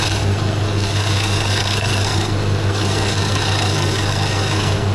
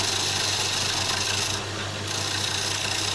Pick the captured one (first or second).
second